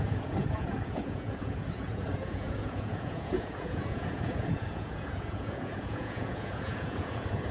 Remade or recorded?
remade